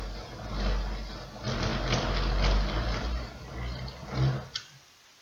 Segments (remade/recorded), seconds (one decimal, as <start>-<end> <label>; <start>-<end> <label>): 0.0-5.2 recorded